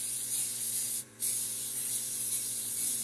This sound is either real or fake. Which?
fake